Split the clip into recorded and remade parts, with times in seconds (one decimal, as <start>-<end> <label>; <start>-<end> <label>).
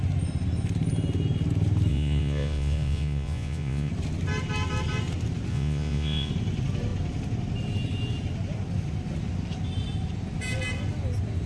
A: 0.0-1.9 recorded; 1.9-3.9 remade; 3.9-5.5 recorded; 5.5-6.3 remade; 6.3-11.5 recorded